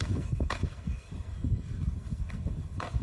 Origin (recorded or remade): remade